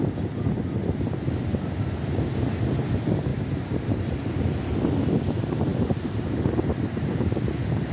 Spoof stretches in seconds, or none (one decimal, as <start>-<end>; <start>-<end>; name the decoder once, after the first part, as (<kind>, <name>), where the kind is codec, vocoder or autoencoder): 0.8-2.5 (vocoder, BigVGAN v2); 3.3-4.0; 5.7-7.4